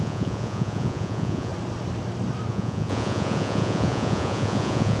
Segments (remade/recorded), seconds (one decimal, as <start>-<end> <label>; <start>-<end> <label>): 0.0-1.5 remade; 1.5-2.5 recorded; 2.5-5.0 remade